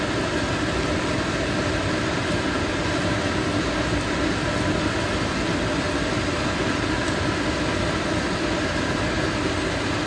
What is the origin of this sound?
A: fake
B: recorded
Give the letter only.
B